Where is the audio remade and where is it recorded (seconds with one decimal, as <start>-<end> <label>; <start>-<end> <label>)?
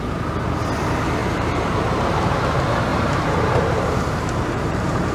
0.0-1.2 recorded; 1.2-2.4 remade; 2.4-2.9 recorded; 2.9-5.1 remade